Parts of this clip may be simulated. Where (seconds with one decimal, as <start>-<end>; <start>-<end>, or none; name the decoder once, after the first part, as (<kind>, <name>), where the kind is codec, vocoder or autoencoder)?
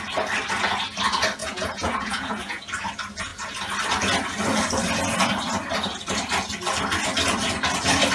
1.4-2.7 (vocoder, Vocos)